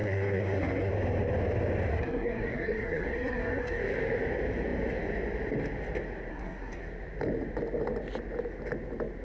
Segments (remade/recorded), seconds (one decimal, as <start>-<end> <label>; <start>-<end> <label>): 0.0-0.9 remade; 0.9-1.9 recorded; 1.9-3.8 remade; 3.8-6.3 recorded; 6.3-6.8 remade; 6.8-9.2 recorded